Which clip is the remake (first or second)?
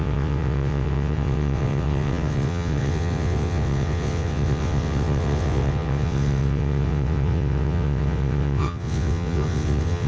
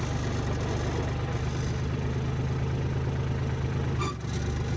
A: first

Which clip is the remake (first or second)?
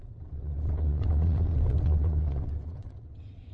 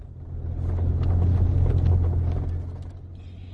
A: first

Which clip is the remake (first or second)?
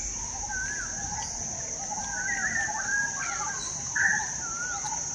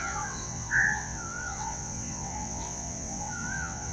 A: second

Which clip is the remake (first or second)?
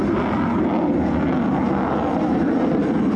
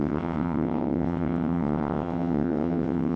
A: second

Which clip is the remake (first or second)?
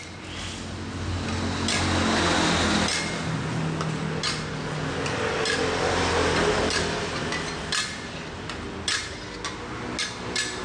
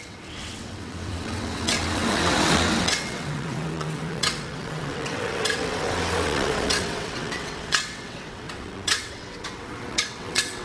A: second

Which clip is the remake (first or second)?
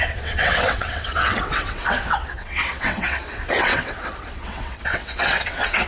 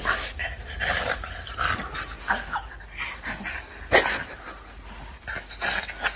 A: first